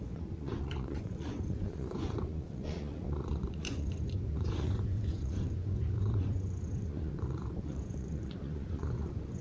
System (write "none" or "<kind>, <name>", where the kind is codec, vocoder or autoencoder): vocoder, Vocos